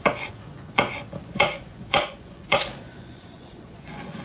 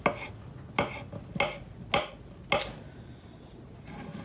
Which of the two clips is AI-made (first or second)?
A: first